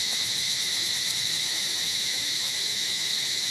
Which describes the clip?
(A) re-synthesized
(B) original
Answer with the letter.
A